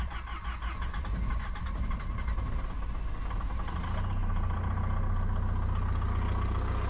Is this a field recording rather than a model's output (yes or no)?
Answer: yes